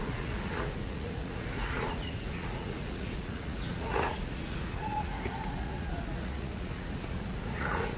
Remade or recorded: remade